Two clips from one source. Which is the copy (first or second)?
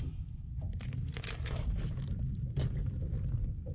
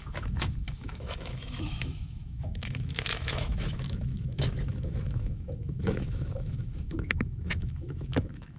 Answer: second